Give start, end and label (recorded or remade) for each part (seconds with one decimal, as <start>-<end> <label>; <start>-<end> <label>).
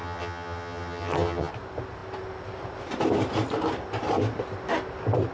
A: 0.0-1.5 remade; 1.5-5.3 recorded